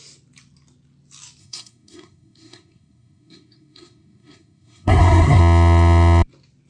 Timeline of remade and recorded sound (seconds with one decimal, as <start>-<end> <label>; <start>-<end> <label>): 0.0-1.4 recorded; 1.4-5.4 remade; 5.4-6.7 recorded